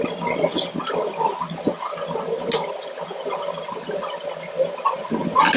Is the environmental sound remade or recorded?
recorded